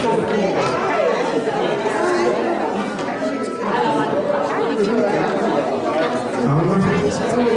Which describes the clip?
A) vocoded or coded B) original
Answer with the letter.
B